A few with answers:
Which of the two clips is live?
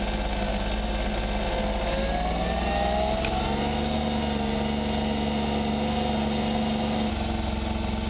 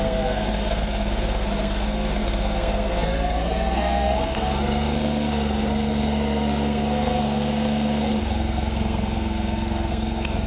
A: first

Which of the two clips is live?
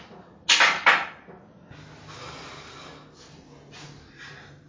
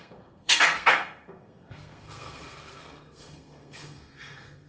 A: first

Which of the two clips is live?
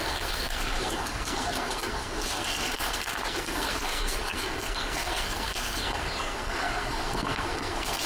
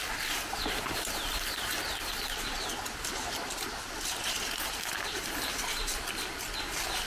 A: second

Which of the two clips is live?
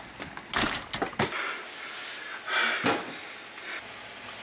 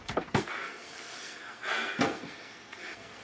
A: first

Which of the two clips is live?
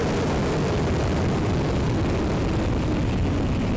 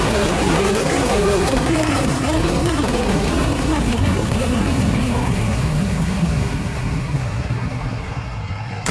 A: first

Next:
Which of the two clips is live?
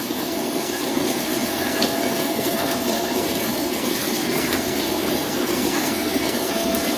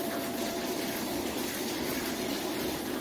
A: second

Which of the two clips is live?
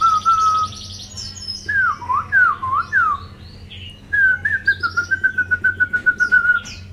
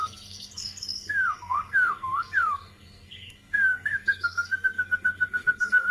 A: first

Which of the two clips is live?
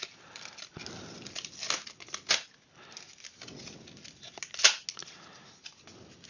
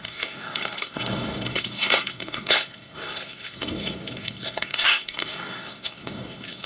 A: first